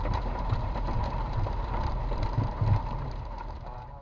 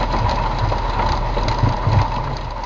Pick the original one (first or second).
second